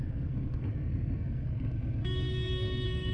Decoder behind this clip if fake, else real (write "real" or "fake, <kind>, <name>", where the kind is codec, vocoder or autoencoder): fake, codec, SNAC